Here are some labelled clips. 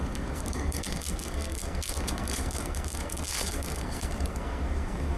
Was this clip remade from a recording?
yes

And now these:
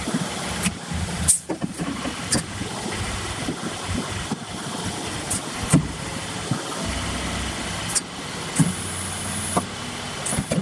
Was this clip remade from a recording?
no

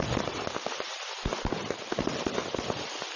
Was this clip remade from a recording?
yes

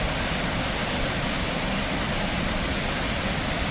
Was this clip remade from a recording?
no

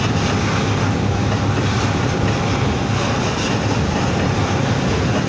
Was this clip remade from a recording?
no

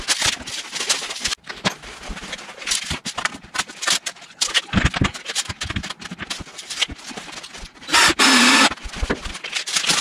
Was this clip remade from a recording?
no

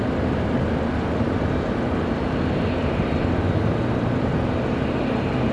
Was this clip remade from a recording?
no